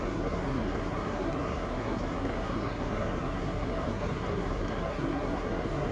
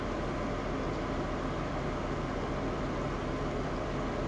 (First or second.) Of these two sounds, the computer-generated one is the first